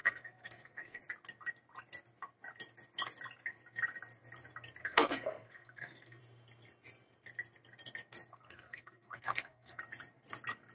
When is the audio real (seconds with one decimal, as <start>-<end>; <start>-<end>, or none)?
1.0-4.8; 6.2-8.3; 9.8-10.7